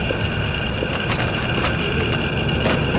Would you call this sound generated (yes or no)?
no